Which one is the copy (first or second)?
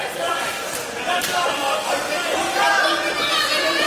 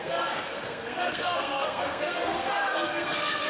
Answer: second